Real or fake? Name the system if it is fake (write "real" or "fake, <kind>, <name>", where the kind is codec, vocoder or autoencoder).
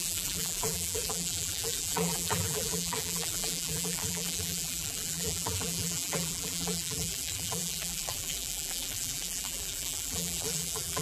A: fake, vocoder, BigVGAN v2